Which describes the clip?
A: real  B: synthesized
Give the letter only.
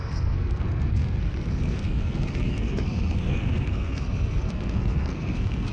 B